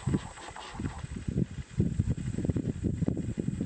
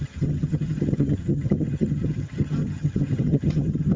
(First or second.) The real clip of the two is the first